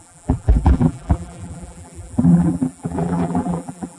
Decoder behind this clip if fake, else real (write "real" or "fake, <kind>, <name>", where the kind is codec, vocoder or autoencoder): fake, vocoder, BigVGAN v2